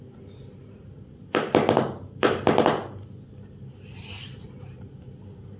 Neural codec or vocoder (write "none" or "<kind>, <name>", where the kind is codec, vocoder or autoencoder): none